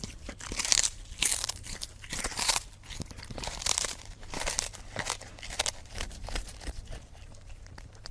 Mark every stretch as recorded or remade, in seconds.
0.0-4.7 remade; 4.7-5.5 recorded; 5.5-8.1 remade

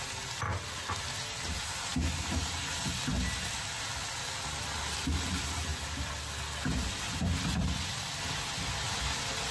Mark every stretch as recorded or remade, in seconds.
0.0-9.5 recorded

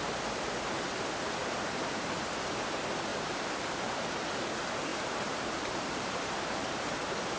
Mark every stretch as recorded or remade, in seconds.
0.0-3.1 recorded; 3.1-3.9 remade; 3.9-4.9 recorded; 4.9-6.9 remade; 6.9-7.4 recorded

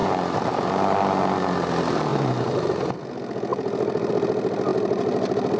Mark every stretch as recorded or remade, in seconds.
0.0-0.6 remade; 0.6-2.1 recorded; 2.1-2.9 remade; 2.9-5.6 recorded

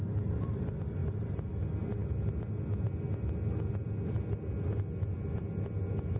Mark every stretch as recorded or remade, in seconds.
0.0-1.0 recorded; 1.0-1.5 remade; 1.5-6.2 recorded

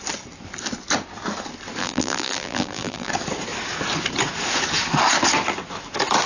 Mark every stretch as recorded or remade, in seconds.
0.0-1.8 recorded; 1.8-3.1 remade; 3.1-6.3 recorded